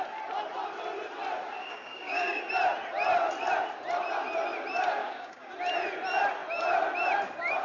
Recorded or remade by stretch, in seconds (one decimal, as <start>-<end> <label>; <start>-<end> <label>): 0.0-1.6 recorded; 1.6-2.4 remade; 2.4-5.0 recorded; 5.0-5.5 remade; 5.5-7.6 recorded

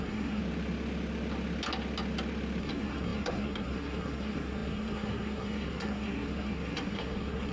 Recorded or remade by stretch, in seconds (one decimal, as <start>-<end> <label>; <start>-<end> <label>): 0.0-0.4 remade; 0.4-2.6 recorded; 2.6-7.5 remade